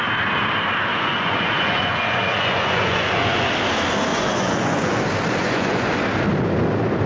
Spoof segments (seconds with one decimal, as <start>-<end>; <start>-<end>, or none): 0.9-3.5; 4.1-5.0; 5.4-6.0